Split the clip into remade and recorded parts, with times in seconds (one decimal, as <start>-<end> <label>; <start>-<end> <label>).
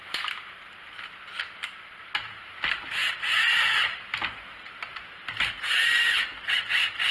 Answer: 0.0-1.6 recorded; 1.6-2.5 remade; 2.5-3.0 recorded; 3.0-4.2 remade; 4.2-7.1 recorded